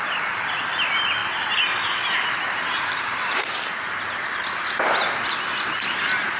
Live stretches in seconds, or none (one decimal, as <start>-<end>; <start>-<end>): 0.0-6.4